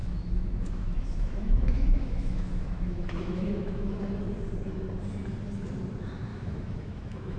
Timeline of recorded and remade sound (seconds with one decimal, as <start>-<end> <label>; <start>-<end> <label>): 0.0-4.0 remade; 4.0-6.3 recorded; 6.3-7.4 remade